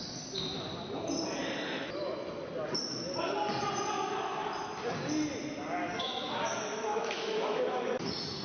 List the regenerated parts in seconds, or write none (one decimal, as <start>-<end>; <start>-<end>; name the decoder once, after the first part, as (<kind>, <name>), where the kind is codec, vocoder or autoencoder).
5.8-7.9 (autoencoder, DAC-VAE)